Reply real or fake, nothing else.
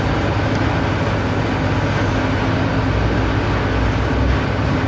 real